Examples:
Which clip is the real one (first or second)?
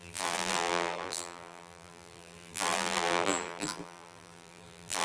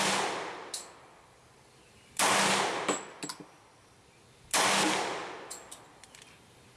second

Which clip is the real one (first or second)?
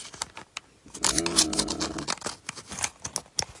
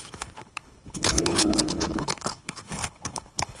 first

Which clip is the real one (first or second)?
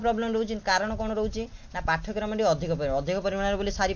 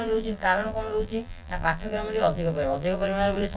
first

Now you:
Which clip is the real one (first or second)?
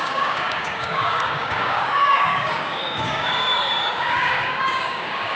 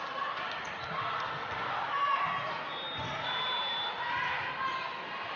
second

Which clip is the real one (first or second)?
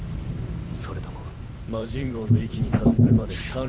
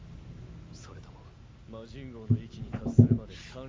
second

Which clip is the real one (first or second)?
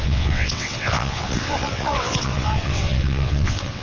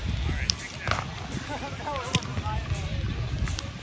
second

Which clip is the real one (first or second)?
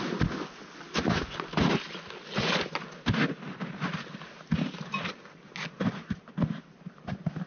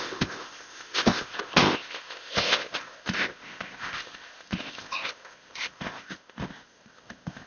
first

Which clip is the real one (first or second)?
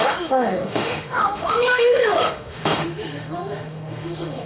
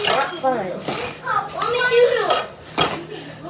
second